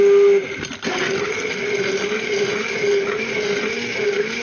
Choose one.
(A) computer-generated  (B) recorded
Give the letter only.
B